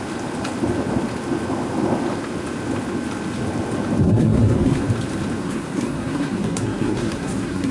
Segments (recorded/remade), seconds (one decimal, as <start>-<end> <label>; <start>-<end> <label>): 0.0-4.0 recorded; 4.0-4.8 remade; 4.8-5.4 recorded; 5.4-7.7 remade